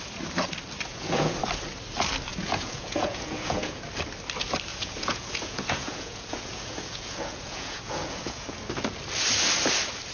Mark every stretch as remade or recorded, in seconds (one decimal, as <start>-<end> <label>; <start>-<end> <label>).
0.0-0.9 recorded; 0.9-1.4 remade; 1.4-2.3 recorded; 2.3-3.8 remade; 3.8-4.7 recorded; 4.7-8.6 remade; 8.6-10.1 recorded